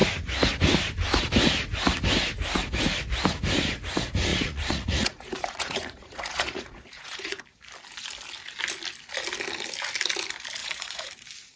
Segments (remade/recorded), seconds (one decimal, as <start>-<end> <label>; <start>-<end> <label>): 0.0-4.3 recorded; 4.3-7.4 remade; 7.4-10.6 recorded; 10.6-11.1 remade; 11.1-11.6 recorded